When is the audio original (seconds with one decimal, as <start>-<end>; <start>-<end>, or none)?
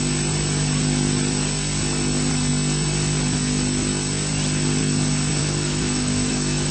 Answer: 0.0-5.4